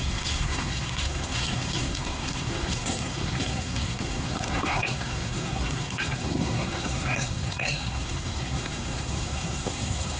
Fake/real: fake